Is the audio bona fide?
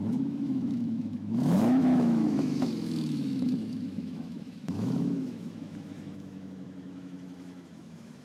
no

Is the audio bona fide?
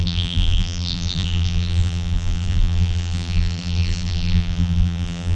no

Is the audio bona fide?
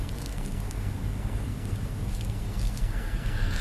no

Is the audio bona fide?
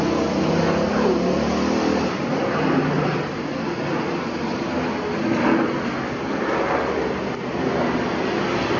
yes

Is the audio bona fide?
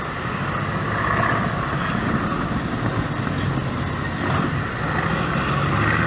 yes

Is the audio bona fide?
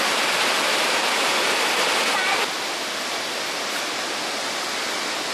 yes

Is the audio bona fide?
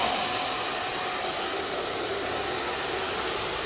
yes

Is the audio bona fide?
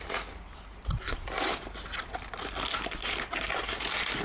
yes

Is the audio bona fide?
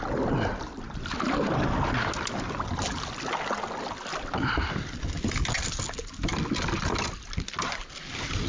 yes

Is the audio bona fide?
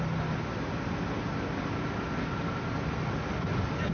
yes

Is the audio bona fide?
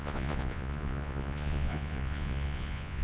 no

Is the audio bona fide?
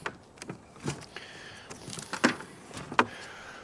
yes